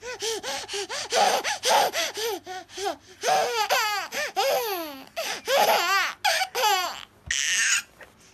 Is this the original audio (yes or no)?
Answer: yes